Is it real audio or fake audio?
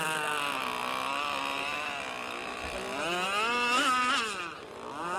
real